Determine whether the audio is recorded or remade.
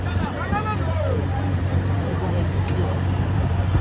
remade